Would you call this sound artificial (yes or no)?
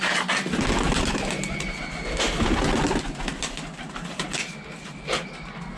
no